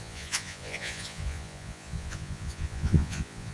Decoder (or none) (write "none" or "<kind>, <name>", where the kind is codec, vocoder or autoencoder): vocoder, Vocos